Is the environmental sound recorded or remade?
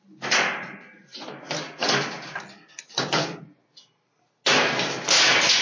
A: recorded